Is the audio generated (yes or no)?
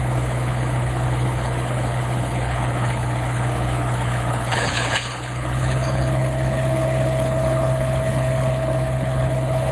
yes